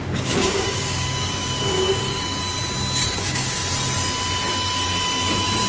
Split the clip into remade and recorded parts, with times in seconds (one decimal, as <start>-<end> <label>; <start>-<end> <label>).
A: 0.0-2.4 remade; 2.4-3.2 recorded; 3.2-3.6 remade; 3.6-5.7 recorded